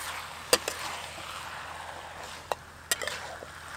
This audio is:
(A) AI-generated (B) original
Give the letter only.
B